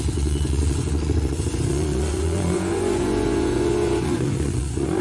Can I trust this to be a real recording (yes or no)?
no